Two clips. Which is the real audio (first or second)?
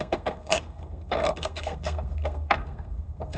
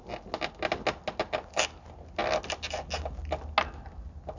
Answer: second